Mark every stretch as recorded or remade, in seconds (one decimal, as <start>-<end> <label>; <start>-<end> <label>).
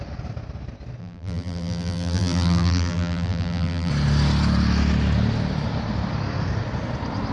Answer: 0.0-1.0 recorded; 1.0-3.9 remade; 3.9-7.3 recorded